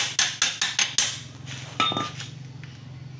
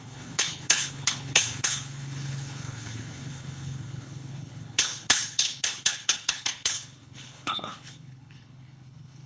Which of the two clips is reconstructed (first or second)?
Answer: second